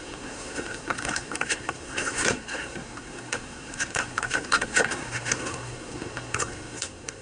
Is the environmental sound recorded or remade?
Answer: remade